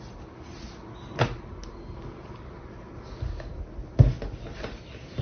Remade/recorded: recorded